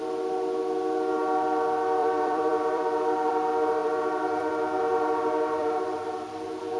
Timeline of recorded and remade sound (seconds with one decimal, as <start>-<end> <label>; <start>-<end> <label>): 0.0-2.0 recorded; 2.0-3.3 remade; 3.3-3.8 recorded; 3.8-4.5 remade; 4.5-5.6 recorded; 5.6-6.8 remade